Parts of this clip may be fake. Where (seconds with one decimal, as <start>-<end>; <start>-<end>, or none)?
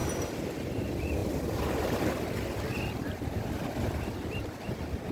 none